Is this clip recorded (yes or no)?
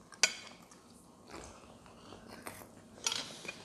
yes